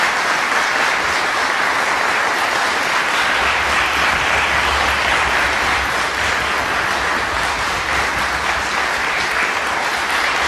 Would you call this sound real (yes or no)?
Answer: yes